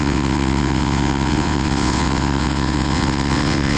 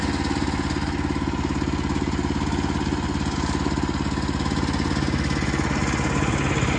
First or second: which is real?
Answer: second